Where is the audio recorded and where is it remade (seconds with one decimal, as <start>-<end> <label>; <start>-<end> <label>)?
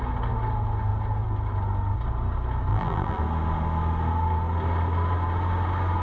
0.0-2.7 recorded; 2.7-3.2 remade; 3.2-6.0 recorded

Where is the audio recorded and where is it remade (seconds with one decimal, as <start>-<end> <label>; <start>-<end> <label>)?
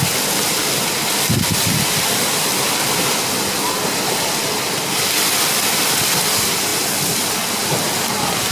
0.0-8.5 recorded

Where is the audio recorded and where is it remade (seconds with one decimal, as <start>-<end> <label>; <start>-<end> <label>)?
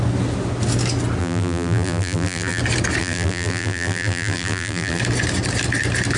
0.0-1.2 recorded; 1.2-2.6 remade; 2.6-3.0 recorded; 3.0-5.0 remade; 5.0-6.2 recorded